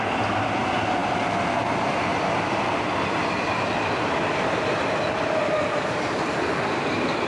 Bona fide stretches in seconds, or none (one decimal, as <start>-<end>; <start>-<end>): 0.0-7.3